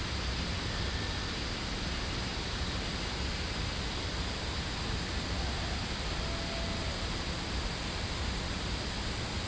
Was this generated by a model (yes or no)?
no